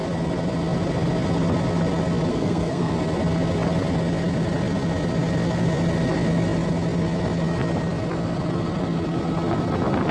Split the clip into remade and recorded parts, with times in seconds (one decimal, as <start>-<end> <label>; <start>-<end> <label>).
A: 0.0-2.3 recorded; 2.3-2.9 remade; 2.9-10.1 recorded